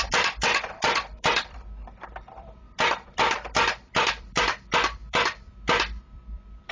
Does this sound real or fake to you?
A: fake